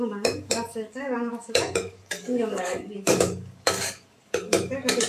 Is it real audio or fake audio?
fake